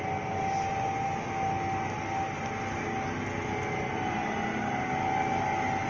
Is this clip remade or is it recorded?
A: recorded